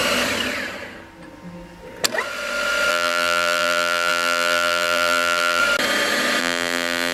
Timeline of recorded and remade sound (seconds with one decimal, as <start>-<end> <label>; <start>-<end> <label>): 0.0-2.9 recorded; 2.9-5.6 remade; 5.6-6.4 recorded; 6.4-7.1 remade